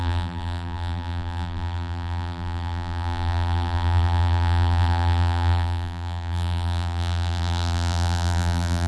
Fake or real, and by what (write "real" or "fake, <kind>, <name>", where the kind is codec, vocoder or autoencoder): fake, vocoder, BigVGAN v2